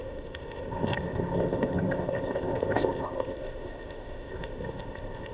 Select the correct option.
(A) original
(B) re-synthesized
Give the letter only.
B